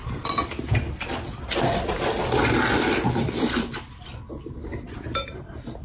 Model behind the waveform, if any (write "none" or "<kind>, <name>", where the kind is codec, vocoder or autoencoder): none